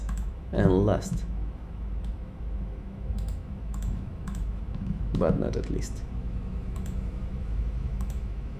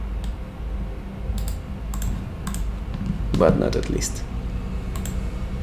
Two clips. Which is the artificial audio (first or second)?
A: first